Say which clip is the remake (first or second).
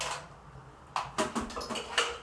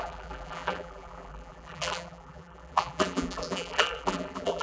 second